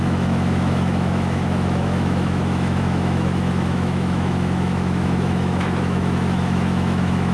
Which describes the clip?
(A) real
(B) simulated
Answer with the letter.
B